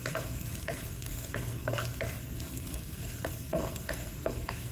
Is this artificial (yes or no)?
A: yes